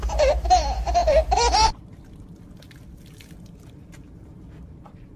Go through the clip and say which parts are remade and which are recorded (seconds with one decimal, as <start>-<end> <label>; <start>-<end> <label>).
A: 0.0-1.0 remade; 1.0-3.4 recorded; 3.4-5.2 remade